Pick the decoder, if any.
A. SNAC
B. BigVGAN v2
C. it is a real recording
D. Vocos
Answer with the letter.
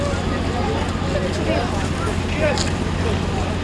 C